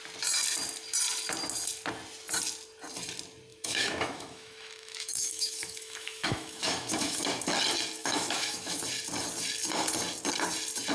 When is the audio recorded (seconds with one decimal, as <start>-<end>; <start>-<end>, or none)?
0.0-3.5; 7.2-8.0; 8.8-10.9